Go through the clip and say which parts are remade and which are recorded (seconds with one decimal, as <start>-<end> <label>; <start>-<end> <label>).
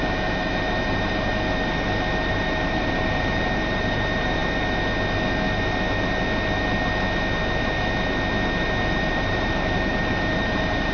0.0-1.3 remade; 1.3-2.3 recorded; 2.3-4.4 remade; 4.4-9.1 recorded; 9.1-10.9 remade